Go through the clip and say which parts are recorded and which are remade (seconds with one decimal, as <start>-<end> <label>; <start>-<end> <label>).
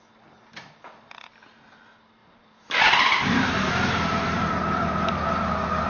0.0-2.2 recorded; 2.2-4.5 remade; 4.5-5.9 recorded